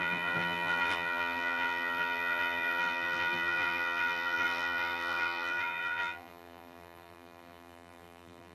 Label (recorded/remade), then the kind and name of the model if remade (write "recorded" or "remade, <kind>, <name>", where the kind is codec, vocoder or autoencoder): remade, vocoder, BigVGAN v2